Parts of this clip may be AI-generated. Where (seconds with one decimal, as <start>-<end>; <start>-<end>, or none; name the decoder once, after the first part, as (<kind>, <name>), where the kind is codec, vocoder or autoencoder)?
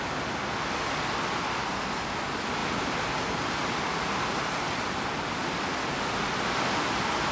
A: none